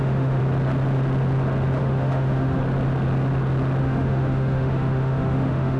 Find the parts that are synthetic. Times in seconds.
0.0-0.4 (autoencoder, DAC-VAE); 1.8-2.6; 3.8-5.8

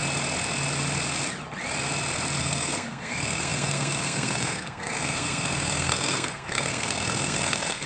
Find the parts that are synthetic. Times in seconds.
2.4-7.9 (codec, SNAC)

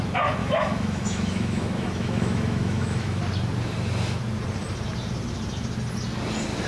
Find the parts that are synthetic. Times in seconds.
0.4-3.2 (autoencoder, DAC-VAE)

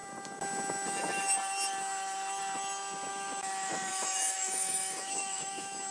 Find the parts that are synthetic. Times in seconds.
3.1-5.9 (autoencoder, DAC-VAE)